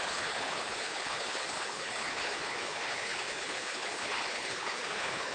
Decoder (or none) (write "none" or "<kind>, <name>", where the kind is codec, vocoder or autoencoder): codec, HILCodec